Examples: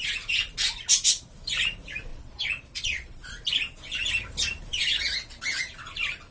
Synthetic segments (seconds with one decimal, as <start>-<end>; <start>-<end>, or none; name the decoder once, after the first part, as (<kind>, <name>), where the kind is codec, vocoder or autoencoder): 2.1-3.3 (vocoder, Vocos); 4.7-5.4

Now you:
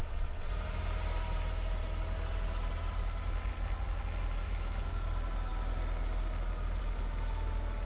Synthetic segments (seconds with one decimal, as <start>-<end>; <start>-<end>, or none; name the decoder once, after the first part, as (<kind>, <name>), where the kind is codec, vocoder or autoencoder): 0.0-0.5 (vocoder, WaveNeXt)

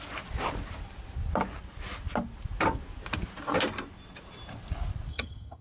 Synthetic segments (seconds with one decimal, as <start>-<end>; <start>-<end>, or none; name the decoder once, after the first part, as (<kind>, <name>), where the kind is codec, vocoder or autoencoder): 5.1-5.6 (vocoder, HiFi-GAN)

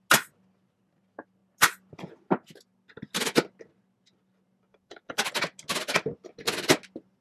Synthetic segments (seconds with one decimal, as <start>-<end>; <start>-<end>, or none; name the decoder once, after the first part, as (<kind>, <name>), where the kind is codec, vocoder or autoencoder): 4.7-5.3 (codec, DAC)

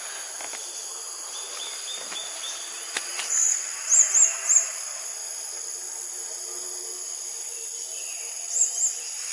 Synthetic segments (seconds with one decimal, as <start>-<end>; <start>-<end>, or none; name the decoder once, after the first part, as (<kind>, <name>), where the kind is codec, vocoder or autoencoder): none

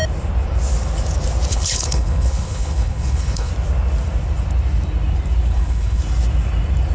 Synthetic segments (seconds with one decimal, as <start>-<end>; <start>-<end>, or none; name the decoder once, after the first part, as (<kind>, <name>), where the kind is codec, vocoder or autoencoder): 1.5-3.5 (codec, HILCodec); 5.5-6.0

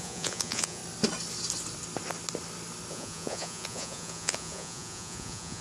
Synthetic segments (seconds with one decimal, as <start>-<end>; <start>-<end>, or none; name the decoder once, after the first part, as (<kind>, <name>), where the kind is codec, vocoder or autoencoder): 0.0-0.8 (vocoder, Vocos); 2.9-5.6

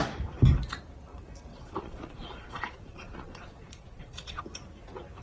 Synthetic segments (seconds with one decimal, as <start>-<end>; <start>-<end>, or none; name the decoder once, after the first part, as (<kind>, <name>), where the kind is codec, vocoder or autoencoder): 1.5-4.4 (vocoder, Vocos)